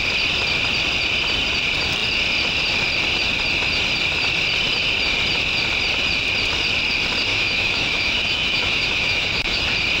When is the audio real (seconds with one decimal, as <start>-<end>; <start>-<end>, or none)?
0.0-7.3; 9.6-10.0